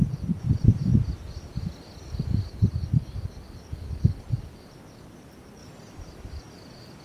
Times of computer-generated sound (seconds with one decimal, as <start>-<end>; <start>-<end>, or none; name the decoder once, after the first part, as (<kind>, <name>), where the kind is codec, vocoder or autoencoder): none

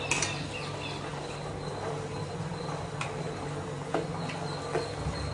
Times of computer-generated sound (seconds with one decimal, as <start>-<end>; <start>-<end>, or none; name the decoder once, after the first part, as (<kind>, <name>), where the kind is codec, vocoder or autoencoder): 1.1-4.3 (vocoder, BigVGAN v2)

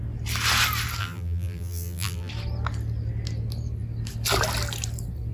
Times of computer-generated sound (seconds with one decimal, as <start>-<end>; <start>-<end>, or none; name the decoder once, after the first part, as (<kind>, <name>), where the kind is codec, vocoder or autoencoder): 1.0-2.3 (vocoder, BigVGAN v2)

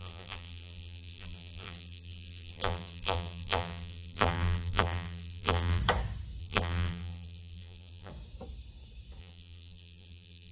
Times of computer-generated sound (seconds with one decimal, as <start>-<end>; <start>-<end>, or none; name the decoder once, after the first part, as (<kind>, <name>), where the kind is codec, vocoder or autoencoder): 0.0-5.8 (vocoder, BigVGAN v2); 6.4-8.1; 9.2-10.5

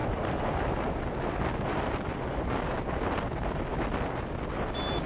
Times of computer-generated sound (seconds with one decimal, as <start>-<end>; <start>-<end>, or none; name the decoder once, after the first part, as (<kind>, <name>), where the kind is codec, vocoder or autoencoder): none